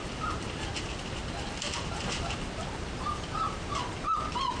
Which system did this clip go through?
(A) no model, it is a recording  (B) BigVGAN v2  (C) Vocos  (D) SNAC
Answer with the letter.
A